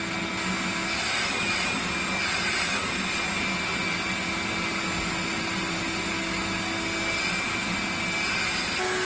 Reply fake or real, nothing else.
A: real